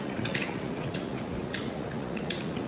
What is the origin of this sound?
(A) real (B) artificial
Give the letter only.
B